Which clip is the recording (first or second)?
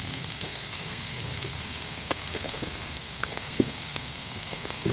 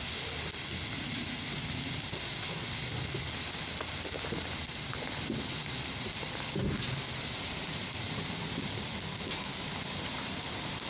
second